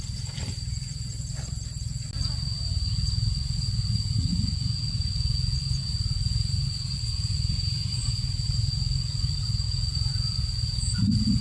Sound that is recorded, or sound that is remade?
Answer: recorded